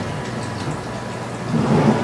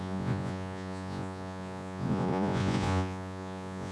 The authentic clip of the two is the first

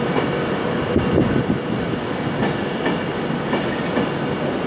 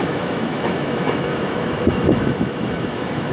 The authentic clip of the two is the first